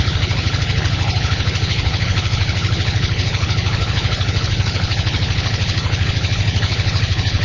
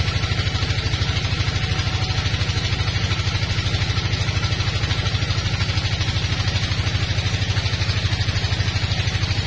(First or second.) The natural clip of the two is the second